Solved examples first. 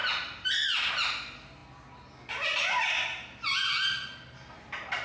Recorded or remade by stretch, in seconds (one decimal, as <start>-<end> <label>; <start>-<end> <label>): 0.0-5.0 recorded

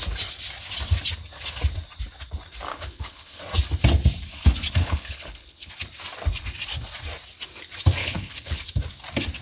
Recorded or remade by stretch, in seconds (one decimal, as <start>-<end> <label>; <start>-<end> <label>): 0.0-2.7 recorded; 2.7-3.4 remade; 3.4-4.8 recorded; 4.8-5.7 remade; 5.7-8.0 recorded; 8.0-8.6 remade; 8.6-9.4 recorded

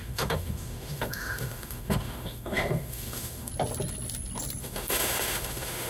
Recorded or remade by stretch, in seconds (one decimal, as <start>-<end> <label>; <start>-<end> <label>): 0.0-3.5 remade; 3.5-4.6 recorded; 4.6-5.9 remade

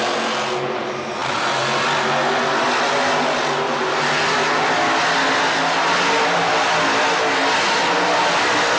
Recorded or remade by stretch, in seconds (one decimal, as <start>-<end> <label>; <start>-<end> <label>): 0.0-8.8 recorded